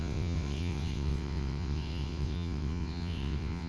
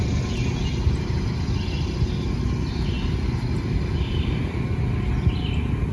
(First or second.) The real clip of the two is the second